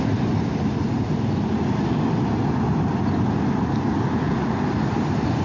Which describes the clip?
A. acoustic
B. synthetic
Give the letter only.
A